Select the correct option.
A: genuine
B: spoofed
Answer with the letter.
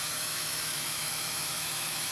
B